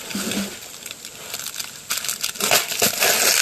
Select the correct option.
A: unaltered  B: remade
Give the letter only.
A